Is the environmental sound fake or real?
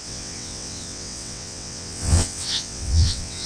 fake